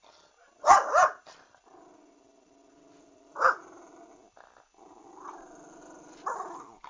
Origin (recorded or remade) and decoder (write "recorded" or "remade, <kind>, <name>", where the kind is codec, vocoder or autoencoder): recorded